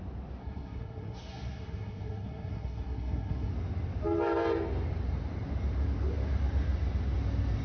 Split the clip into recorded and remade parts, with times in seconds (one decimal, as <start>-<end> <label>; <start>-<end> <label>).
0.0-0.4 recorded; 0.4-3.5 remade; 3.5-7.6 recorded